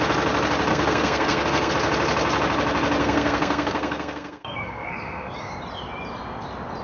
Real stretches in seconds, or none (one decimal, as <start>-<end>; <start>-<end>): 0.0-0.7; 1.7-3.0; 5.3-6.8